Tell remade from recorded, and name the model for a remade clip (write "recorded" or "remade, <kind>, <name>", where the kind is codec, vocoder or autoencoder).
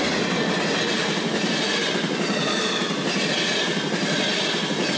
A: remade, vocoder, BigVGAN v2